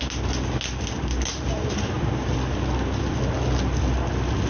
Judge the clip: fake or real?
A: real